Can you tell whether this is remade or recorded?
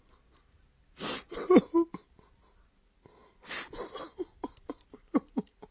recorded